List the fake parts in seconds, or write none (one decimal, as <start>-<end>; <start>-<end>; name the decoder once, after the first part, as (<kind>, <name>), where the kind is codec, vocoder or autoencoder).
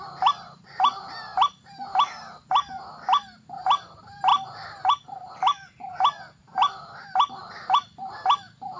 none